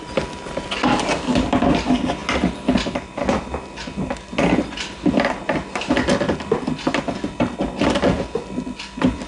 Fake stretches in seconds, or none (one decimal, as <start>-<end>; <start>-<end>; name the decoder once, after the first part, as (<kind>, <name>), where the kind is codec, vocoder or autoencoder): none